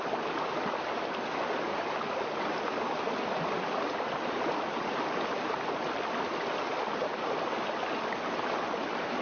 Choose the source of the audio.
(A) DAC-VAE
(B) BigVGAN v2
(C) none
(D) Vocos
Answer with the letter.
C